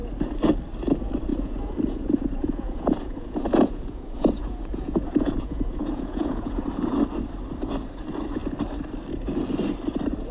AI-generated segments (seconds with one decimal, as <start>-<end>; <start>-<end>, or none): 1.3-6.6